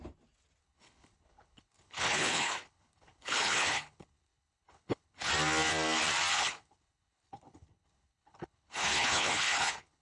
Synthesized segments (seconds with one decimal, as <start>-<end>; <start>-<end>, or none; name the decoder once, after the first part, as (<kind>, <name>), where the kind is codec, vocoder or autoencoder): 0.6-5.3 (codec, HILCodec); 6.3-10.0